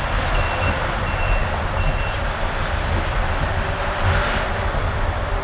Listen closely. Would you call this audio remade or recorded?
recorded